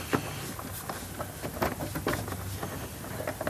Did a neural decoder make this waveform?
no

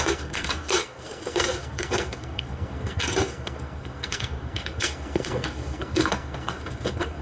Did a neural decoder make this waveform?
yes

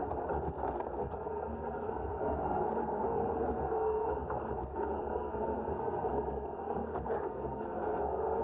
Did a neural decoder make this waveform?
yes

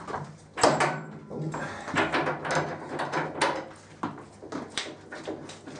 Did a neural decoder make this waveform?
no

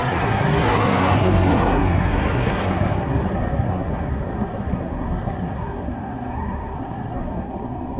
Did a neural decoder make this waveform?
yes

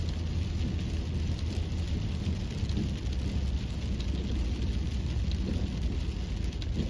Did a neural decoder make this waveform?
no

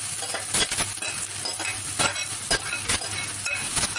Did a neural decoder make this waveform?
no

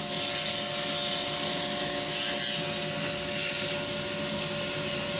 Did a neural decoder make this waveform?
no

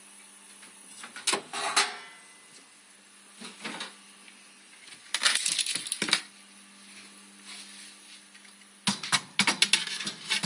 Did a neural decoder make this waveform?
no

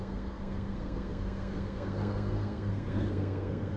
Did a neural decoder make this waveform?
yes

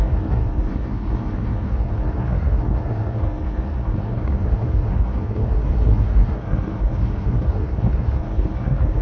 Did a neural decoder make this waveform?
yes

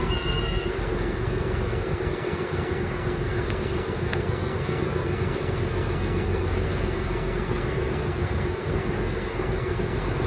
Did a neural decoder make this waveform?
yes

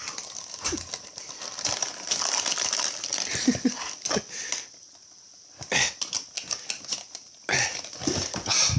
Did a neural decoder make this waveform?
no